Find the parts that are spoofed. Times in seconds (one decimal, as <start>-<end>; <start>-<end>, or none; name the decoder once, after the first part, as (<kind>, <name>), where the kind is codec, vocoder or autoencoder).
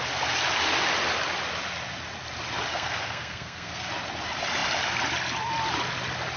2.7-3.9 (codec, SNAC)